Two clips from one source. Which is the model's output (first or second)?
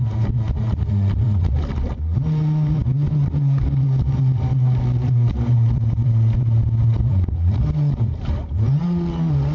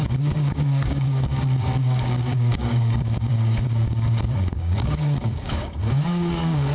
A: second